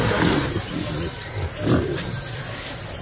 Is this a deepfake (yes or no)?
no